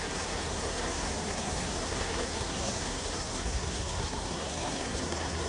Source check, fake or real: fake